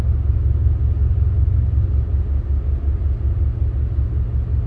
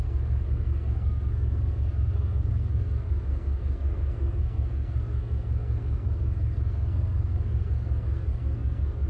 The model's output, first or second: second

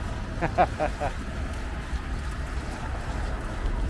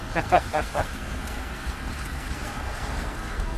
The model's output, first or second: second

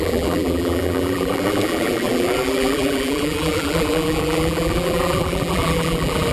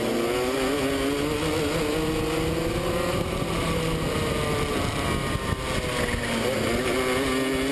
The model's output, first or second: first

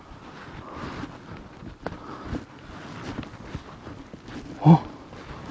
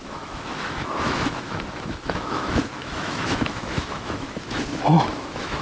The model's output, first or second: second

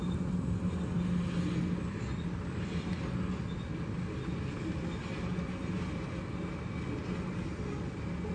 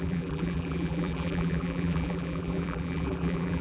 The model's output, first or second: second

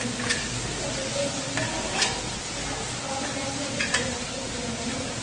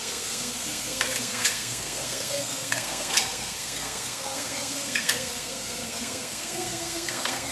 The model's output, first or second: second